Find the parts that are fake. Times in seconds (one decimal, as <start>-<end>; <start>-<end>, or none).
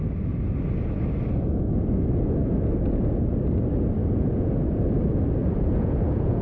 4.0-4.8; 5.4-6.4